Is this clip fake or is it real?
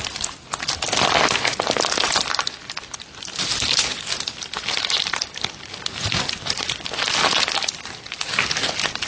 real